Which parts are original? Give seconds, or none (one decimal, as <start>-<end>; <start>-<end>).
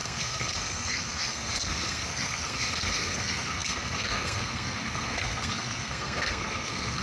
none